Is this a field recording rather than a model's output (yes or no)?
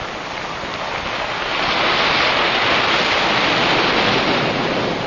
yes